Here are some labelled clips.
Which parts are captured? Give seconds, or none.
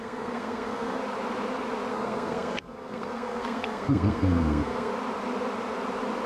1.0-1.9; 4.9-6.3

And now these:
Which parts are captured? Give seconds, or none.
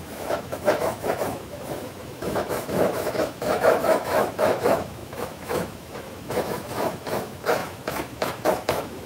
none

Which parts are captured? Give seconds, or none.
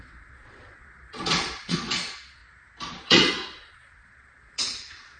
2.4-2.9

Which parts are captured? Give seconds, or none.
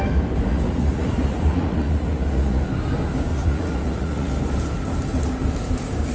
0.0-0.5; 2.6-3.3; 4.3-6.1